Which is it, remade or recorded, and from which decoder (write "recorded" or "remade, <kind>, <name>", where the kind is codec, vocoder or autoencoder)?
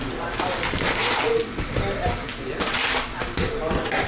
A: recorded